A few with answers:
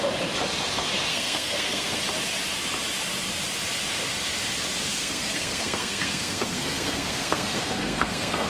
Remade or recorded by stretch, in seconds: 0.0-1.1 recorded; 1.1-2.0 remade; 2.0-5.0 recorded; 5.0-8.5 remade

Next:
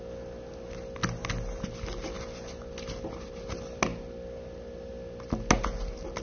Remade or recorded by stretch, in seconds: 0.0-6.2 recorded

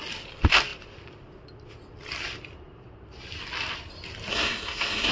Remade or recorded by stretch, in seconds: 0.0-4.3 recorded; 4.3-5.1 remade

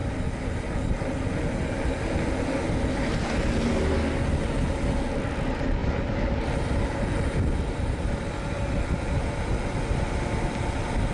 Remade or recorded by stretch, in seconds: 0.0-11.1 recorded

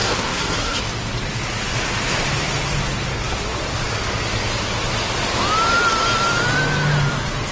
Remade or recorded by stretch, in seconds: 0.0-0.8 remade; 0.8-7.5 recorded

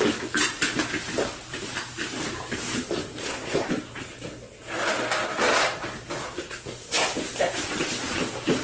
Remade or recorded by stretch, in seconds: 0.0-3.2 recorded; 3.2-3.7 remade; 3.7-6.2 recorded; 6.2-6.7 remade; 6.7-8.6 recorded

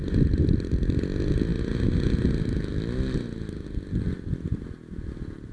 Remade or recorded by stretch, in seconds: 0.0-5.5 recorded

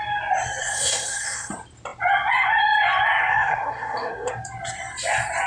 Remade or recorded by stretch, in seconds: 0.0-0.6 recorded; 0.6-1.5 remade; 1.5-3.2 recorded; 3.2-4.3 remade; 4.3-5.5 recorded